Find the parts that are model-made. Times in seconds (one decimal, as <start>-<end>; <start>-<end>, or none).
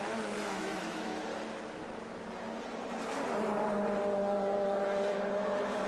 0.0-1.3; 4.8-5.9